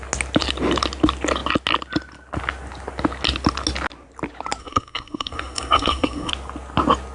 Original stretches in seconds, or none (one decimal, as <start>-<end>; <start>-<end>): 0.0-4.6; 6.3-7.1